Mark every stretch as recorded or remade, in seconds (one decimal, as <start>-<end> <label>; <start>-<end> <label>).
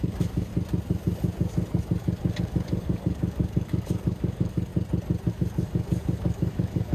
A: 0.0-0.5 remade; 0.5-2.4 recorded; 2.4-4.7 remade; 4.7-5.3 recorded; 5.3-6.9 remade